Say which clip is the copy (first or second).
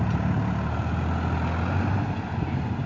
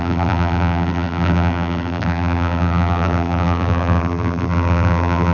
second